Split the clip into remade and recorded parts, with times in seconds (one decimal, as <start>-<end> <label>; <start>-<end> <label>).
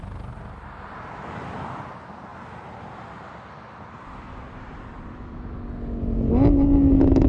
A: 0.0-7.3 recorded